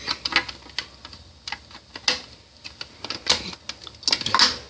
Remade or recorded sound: recorded